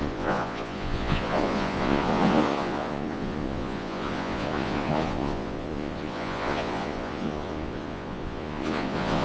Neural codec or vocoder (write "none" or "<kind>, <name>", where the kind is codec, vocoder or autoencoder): vocoder, Vocos